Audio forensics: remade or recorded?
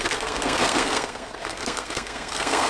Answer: remade